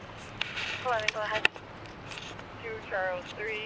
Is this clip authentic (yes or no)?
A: yes